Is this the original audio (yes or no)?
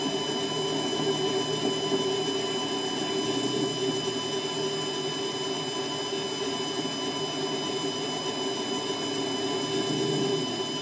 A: yes